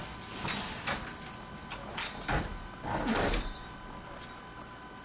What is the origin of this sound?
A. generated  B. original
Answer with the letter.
B